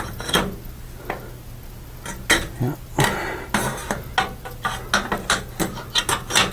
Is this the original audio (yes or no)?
yes